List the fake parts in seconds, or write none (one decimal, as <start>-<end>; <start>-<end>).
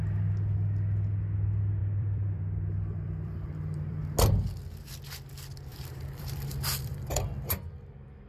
1.8-4.0; 5.7-7.5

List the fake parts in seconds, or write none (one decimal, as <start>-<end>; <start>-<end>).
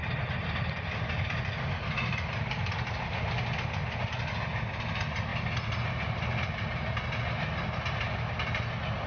0.0-3.3; 5.3-6.2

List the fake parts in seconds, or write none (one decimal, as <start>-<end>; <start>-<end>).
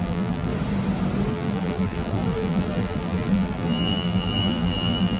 0.0-0.5; 1.3-5.2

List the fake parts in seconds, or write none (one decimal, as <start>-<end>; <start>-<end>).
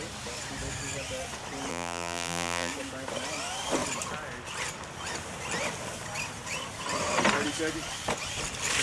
1.7-2.7